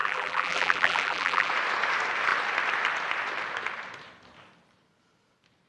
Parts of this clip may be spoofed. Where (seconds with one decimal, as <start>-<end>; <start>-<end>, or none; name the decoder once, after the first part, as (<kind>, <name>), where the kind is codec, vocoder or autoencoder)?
0.0-1.5 (vocoder, BigVGAN v2)